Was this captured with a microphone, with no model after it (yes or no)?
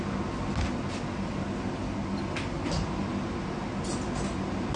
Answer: yes